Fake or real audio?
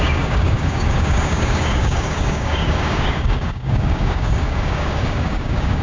fake